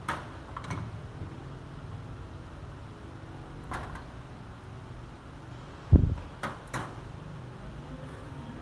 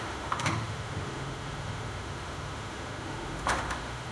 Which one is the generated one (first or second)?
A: second